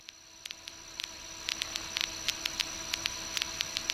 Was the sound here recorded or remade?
recorded